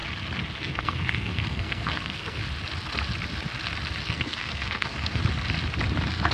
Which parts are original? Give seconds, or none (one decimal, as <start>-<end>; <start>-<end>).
0.0-0.6; 2.4-4.0; 5.2-6.3